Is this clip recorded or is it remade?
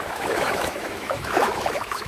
remade